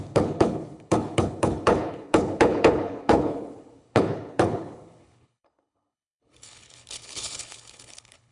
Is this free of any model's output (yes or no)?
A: no